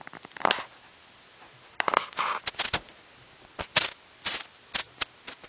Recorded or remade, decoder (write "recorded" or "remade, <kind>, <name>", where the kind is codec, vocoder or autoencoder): recorded